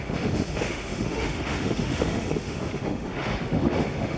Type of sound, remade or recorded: remade